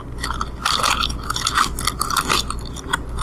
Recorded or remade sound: recorded